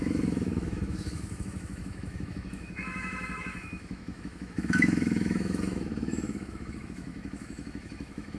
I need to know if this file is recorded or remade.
remade